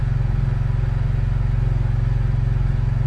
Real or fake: real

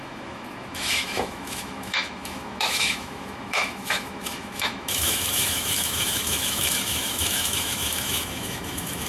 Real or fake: fake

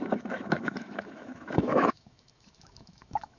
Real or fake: fake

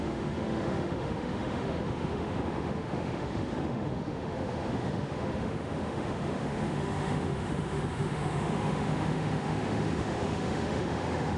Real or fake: fake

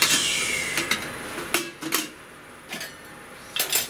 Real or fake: real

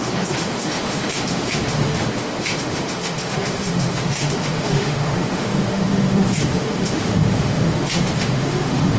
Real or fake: fake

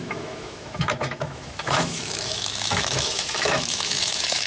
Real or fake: fake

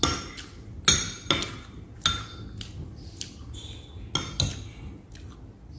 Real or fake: real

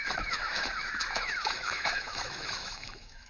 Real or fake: fake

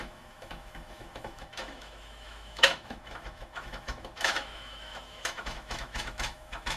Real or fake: fake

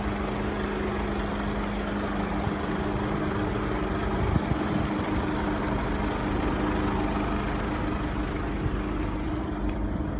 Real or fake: real